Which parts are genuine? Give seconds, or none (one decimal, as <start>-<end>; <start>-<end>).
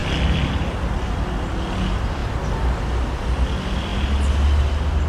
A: 0.0-5.1